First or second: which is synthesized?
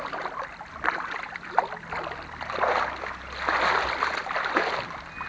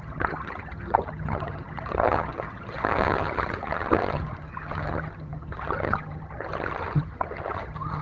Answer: second